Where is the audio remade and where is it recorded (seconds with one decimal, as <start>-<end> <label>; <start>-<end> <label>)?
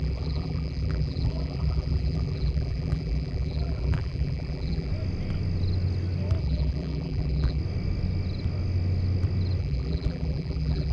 0.0-4.9 remade; 4.9-6.4 recorded; 6.4-7.6 remade; 7.6-9.6 recorded; 9.6-10.9 remade